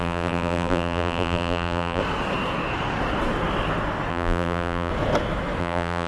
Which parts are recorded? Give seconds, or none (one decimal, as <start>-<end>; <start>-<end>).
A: 2.0-4.1; 4.9-5.6